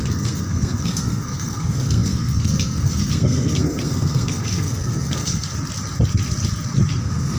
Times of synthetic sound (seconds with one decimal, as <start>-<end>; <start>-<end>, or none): 0.0-5.5; 7.0-7.4